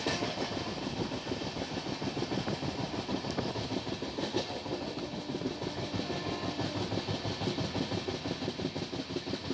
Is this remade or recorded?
recorded